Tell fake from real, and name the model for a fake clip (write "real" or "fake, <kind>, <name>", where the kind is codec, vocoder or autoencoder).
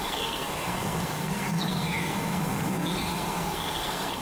fake, codec, SNAC